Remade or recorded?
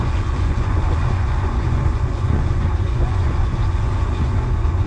remade